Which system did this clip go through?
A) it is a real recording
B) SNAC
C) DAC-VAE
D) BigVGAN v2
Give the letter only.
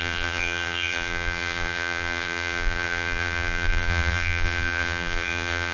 D